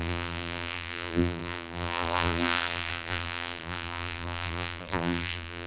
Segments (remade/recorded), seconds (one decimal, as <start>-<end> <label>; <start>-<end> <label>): 0.0-5.7 remade